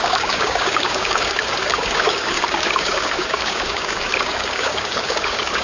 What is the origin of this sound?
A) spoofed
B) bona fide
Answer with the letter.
A